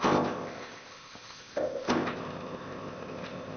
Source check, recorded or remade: remade